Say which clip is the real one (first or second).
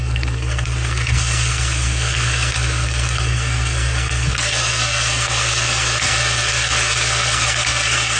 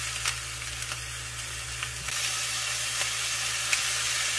second